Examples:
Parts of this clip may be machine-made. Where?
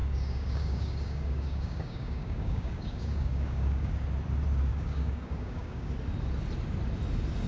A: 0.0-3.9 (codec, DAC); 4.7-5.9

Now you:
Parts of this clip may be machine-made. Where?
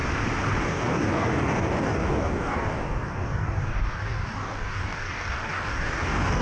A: 0.6-6.4 (codec, DAC)